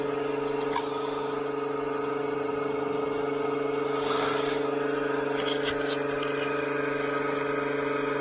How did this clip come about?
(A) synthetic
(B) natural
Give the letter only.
B